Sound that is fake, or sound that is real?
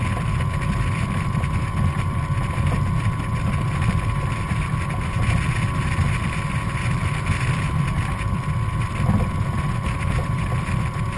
fake